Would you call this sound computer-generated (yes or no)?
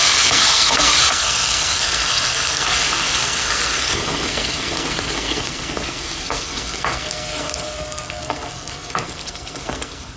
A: yes